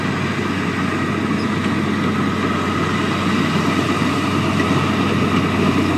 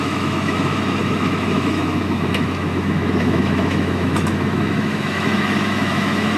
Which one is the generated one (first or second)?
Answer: second